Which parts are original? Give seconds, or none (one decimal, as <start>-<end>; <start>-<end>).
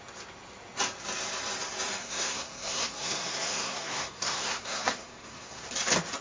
0.0-2.0; 5.7-6.2